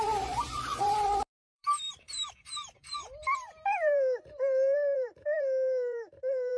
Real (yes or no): no